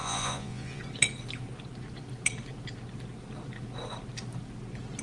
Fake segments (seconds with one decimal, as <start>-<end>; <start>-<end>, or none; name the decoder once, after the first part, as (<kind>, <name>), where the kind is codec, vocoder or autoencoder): 0.0-0.8 (vocoder, Vocos)